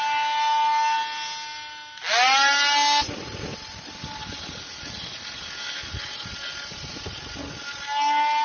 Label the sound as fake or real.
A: real